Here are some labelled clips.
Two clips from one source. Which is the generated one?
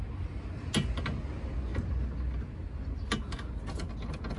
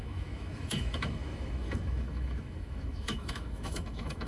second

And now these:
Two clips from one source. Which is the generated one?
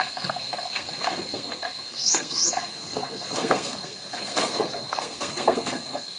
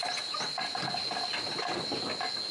first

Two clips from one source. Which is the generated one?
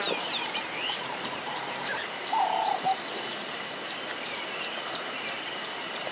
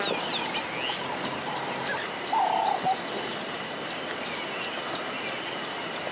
first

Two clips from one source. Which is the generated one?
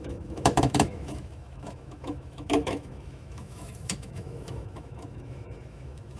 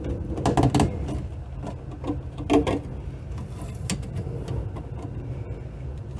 first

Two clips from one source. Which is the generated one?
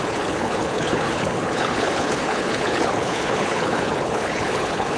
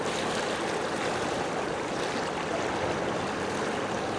first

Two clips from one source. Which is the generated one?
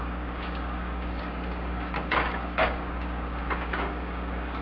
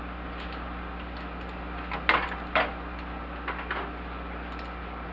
first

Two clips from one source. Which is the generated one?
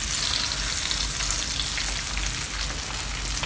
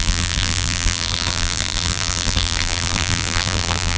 second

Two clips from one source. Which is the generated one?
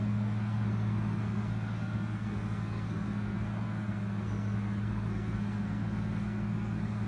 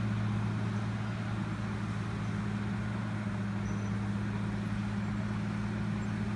first